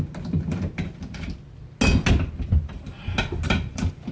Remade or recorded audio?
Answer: recorded